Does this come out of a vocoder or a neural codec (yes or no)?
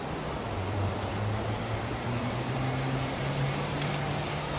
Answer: yes